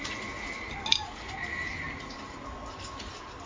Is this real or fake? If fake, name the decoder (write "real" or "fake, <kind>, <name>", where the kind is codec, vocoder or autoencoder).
real